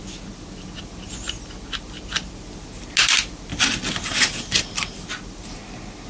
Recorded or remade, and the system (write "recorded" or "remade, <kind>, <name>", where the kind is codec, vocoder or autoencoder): recorded